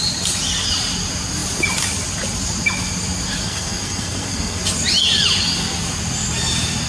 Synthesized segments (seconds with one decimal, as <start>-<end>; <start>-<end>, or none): 3.4-4.6